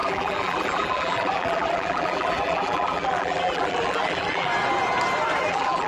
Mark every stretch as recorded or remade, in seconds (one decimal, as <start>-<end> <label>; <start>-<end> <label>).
0.0-4.5 remade; 4.5-5.4 recorded; 5.4-5.9 remade